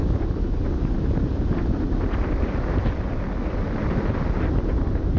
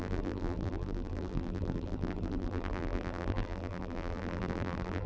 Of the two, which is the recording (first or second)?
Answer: first